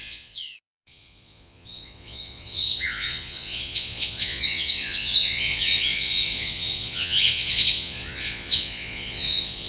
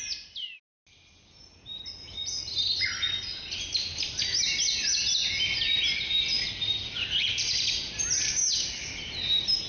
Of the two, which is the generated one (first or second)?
first